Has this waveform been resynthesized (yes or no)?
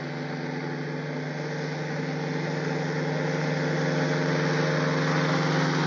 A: no